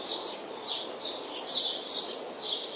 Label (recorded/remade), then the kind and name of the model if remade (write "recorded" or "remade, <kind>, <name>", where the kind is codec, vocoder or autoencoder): remade, vocoder, BigVGAN v2